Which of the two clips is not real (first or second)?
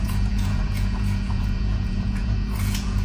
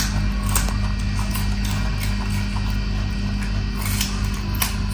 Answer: first